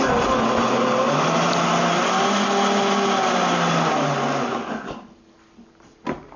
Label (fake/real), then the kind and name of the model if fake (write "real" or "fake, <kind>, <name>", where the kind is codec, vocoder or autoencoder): real